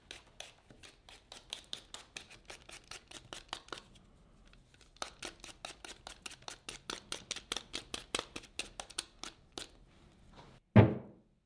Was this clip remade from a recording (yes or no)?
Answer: no